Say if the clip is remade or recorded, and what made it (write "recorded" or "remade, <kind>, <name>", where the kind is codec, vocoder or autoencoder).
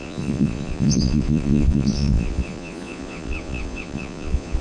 remade, vocoder, Vocos